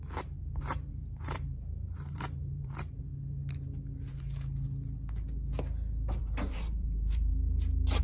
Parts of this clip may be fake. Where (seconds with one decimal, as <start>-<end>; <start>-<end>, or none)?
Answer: 0.0-3.1; 6.2-7.3